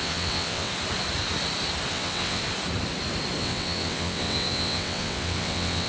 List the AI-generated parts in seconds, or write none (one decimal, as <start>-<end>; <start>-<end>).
0.0-0.7; 1.9-2.4; 3.4-5.9